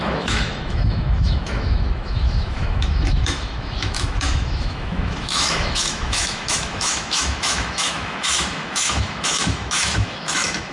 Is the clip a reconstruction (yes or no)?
yes